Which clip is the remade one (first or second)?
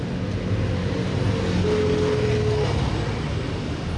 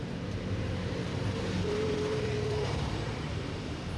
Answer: second